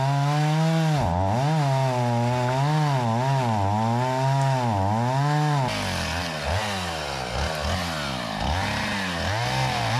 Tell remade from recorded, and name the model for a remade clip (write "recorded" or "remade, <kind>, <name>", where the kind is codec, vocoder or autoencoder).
recorded